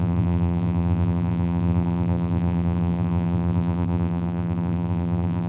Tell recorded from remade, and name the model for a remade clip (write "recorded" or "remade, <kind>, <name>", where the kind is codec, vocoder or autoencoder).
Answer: remade, vocoder, BigVGAN v2